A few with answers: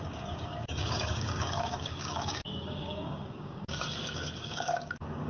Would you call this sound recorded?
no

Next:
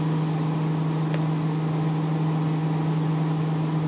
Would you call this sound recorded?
yes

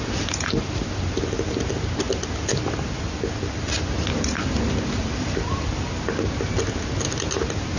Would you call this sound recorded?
yes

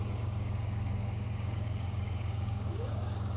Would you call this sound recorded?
no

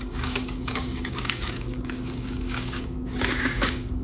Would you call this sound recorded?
no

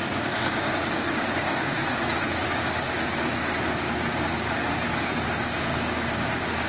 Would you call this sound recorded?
no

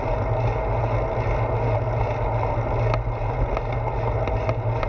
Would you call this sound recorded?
yes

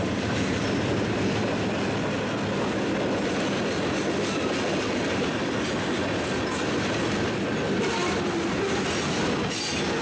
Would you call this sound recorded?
yes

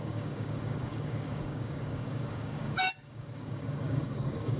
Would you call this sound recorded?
no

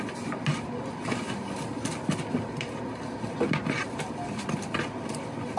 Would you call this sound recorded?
yes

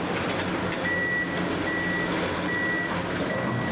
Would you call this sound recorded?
yes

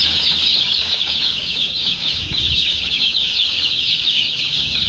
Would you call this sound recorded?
no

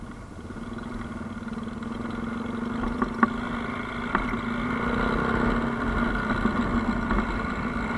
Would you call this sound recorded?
yes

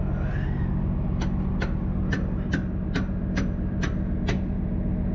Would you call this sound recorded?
yes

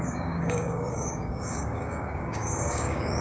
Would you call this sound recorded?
no